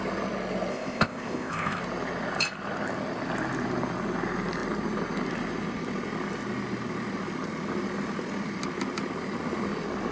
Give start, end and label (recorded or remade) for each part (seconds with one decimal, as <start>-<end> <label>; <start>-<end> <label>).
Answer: 0.0-0.7 recorded; 0.7-1.8 remade; 1.8-10.1 recorded